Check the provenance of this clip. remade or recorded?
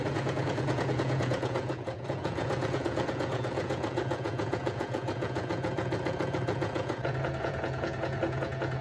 remade